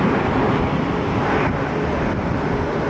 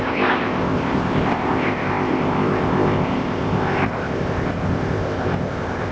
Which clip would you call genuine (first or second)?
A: first